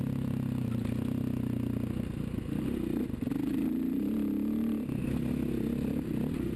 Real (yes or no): yes